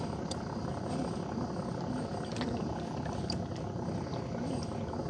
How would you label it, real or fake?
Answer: real